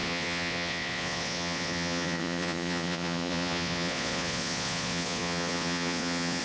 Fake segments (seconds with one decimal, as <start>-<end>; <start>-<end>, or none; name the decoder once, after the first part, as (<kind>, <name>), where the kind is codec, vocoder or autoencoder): 0.0-6.4 (vocoder, Vocos)